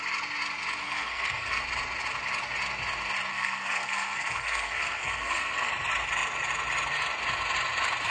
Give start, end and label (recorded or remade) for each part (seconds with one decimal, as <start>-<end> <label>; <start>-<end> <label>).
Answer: 0.0-0.8 recorded; 0.8-1.6 remade; 1.6-3.3 recorded; 3.3-5.7 remade; 5.7-8.1 recorded